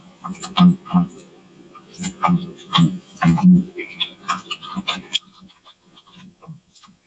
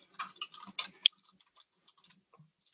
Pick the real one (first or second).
second